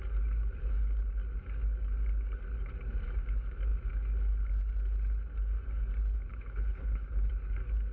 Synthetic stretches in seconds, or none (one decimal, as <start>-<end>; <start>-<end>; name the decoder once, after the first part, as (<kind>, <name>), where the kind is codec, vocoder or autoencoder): 6.3-7.3 (codec, HILCodec)